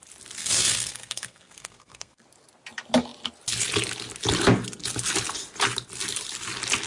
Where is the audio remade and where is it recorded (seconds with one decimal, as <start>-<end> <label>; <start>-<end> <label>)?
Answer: 0.0-0.4 recorded; 0.4-2.2 remade; 2.2-6.9 recorded